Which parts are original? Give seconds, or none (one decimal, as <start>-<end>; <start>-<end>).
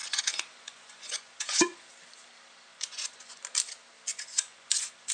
1.9-2.7; 3.4-4.1